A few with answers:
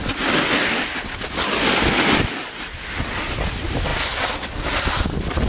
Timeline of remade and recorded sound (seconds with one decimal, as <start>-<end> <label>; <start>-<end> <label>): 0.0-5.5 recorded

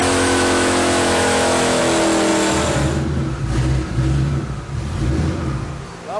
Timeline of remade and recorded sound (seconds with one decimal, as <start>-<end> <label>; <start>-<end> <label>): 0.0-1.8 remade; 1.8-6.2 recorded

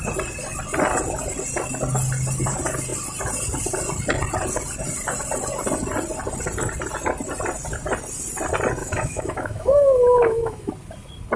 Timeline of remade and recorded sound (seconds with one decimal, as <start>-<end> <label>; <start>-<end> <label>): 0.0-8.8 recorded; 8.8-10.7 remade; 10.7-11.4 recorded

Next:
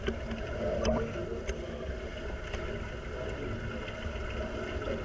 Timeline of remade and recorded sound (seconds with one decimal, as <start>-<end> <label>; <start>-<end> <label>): 0.0-5.0 recorded

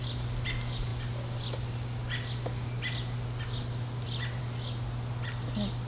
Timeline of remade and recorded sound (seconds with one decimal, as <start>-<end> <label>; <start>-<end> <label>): 0.0-5.9 recorded

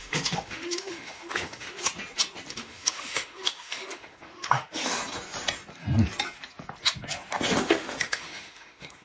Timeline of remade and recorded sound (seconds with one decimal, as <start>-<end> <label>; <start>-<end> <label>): 0.0-1.9 remade; 1.9-2.5 recorded; 2.5-5.0 remade; 5.0-7.6 recorded; 7.6-9.0 remade

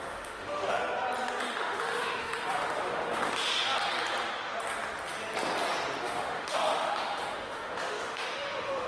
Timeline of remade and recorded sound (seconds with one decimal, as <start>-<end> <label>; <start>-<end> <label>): 0.0-0.8 remade; 0.8-1.4 recorded; 1.4-3.5 remade; 3.5-6.0 recorded; 6.0-8.9 remade

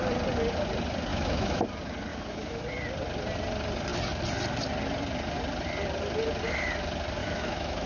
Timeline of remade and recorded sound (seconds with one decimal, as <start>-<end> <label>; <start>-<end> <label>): 0.0-1.1 recorded; 1.1-1.6 remade; 1.6-2.1 recorded; 2.1-2.6 remade; 2.6-7.2 recorded; 7.2-7.9 remade